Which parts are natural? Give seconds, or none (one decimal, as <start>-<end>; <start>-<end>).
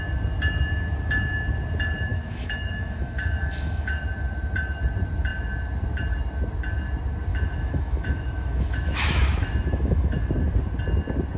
0.0-2.1; 4.0-7.3; 10.3-11.4